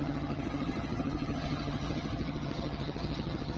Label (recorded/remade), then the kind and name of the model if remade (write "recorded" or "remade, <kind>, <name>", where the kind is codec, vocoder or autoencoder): remade, vocoder, HiFi-GAN